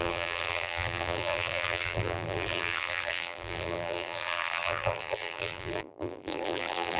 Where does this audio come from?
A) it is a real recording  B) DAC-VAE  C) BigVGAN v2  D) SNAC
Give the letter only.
C